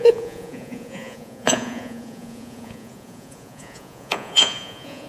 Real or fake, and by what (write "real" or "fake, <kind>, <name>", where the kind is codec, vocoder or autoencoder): fake, vocoder, Vocos